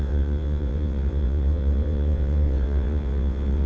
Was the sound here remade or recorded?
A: remade